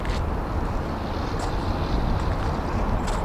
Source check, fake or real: real